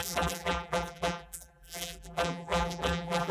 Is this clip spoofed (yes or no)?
yes